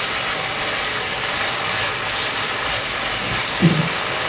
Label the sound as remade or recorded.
recorded